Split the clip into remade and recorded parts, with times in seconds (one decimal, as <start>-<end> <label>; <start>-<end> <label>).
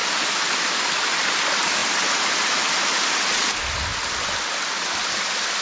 0.0-5.6 recorded